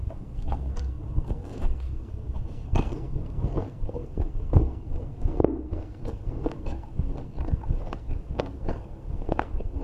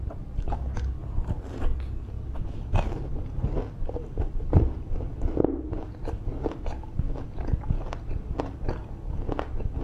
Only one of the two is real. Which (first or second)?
second